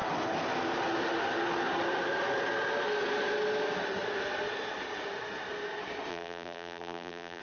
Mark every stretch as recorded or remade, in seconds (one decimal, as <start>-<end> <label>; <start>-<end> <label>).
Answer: 0.0-6.1 recorded; 6.1-7.4 remade